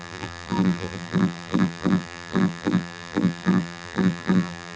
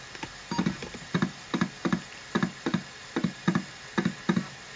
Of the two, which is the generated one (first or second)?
first